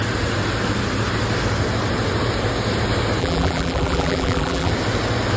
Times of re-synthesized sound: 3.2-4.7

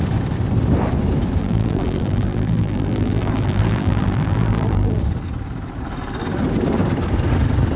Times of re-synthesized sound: 1.4-5.0

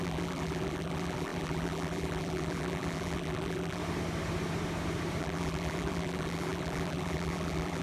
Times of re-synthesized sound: 0.0-3.8; 5.2-7.8

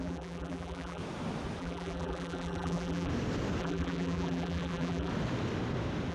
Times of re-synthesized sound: 0.0-1.0; 1.6-3.1; 3.6-5.1

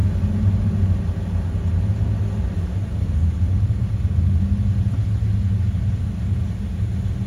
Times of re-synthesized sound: none

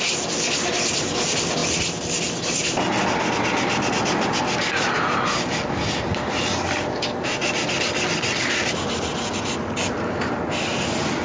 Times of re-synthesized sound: none